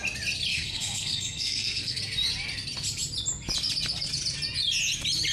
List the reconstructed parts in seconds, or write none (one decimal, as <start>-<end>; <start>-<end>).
0.5-2.0